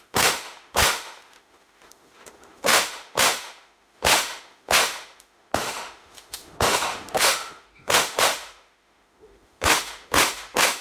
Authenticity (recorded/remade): remade